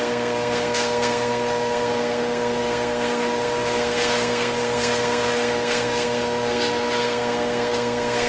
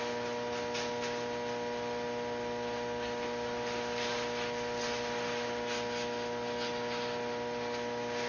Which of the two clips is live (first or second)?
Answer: second